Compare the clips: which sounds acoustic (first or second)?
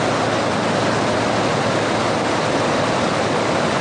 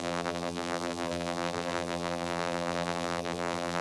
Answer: first